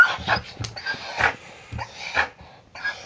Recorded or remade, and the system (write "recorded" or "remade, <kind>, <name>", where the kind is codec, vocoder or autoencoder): recorded